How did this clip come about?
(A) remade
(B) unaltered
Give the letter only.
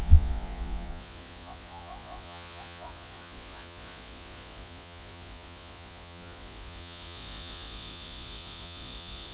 A